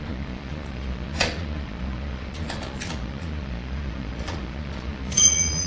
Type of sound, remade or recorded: remade